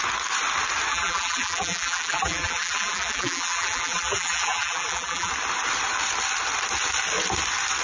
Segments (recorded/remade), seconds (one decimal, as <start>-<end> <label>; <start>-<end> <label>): 0.0-0.9 recorded; 0.9-5.3 remade; 5.3-7.8 recorded